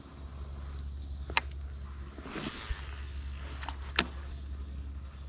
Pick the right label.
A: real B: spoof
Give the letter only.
A